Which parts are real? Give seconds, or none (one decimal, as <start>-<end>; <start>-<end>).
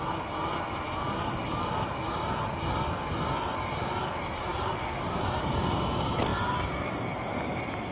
0.0-4.5; 5.2-7.9